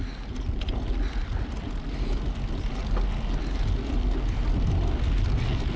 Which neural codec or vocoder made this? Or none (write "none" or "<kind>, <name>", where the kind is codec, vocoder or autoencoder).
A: none